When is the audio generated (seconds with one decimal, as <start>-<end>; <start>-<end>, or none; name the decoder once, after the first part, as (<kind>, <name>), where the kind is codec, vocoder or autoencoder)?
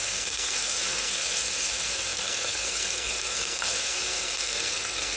0.0-5.2 (codec, SNAC)